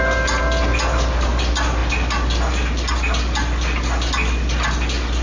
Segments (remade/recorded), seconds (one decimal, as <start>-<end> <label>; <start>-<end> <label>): 0.0-5.2 recorded